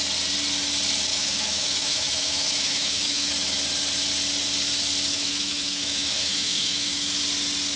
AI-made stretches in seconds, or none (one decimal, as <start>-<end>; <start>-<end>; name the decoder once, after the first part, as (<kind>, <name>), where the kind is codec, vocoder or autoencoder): 1.1-3.3 (autoencoder, DAC-VAE); 5.1-7.1